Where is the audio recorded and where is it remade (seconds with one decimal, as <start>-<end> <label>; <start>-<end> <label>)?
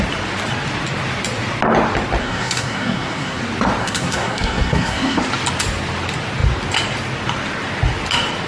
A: 0.0-2.2 recorded; 2.2-3.4 remade; 3.4-3.8 recorded; 3.8-5.2 remade; 5.2-8.5 recorded